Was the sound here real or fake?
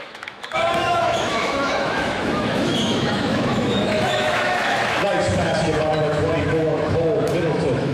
fake